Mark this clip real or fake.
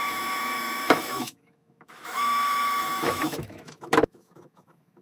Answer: fake